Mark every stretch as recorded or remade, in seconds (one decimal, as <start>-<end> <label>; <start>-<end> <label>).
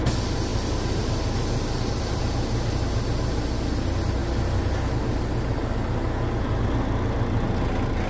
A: 0.0-0.5 recorded; 0.5-2.2 remade; 2.2-8.1 recorded